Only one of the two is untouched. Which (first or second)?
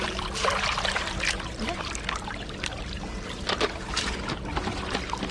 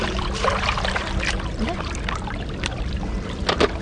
first